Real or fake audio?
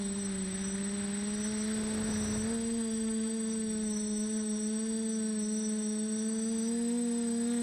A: real